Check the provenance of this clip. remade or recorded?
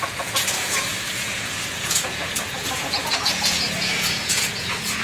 remade